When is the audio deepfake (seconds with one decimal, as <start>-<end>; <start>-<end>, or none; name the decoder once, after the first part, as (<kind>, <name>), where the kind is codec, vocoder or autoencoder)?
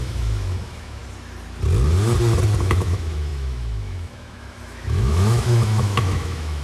0.0-1.0 (autoencoder, DAC-VAE); 2.6-6.6